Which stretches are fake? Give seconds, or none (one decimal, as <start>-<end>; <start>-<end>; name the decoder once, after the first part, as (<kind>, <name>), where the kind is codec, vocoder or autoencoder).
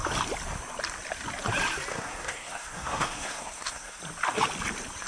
1.9-4.0 (codec, SNAC)